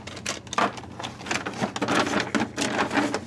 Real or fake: real